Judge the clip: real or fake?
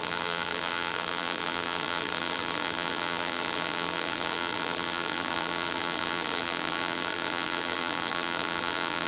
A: fake